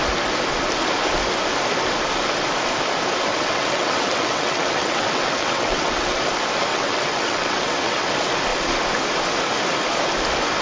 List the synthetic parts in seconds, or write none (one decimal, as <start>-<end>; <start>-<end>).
3.3-6.2; 6.7-8.1